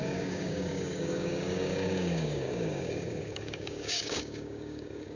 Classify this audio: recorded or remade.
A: remade